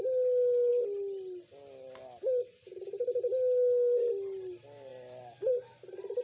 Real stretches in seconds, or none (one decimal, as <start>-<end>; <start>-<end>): 0.0-6.2